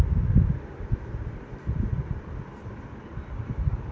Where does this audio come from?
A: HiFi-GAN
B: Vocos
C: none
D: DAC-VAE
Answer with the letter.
C